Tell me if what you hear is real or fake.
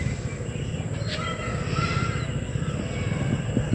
real